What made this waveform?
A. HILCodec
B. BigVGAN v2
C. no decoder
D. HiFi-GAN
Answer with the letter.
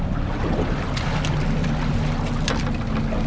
C